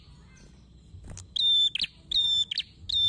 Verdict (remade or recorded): recorded